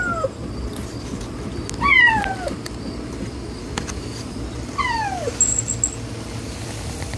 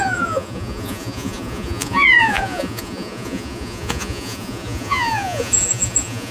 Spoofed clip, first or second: second